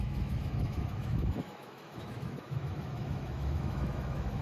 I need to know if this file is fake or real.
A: fake